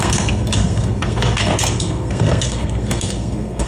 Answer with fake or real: fake